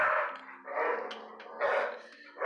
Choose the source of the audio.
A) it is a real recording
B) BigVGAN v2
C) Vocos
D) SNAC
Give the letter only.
A